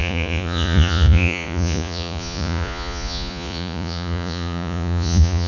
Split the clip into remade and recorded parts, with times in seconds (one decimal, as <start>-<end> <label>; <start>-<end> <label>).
0.0-5.5 remade